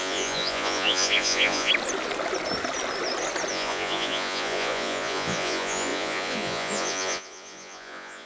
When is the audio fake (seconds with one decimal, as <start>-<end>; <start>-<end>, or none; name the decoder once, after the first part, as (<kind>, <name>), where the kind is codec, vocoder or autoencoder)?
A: 0.0-1.7 (vocoder, Vocos); 3.5-8.3